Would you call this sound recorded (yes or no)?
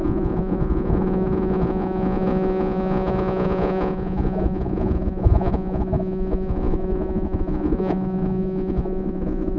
no